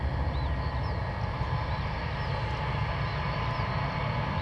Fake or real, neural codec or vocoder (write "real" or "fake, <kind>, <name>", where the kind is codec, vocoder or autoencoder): real